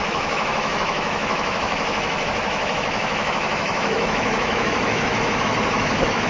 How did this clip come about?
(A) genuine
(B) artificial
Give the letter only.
B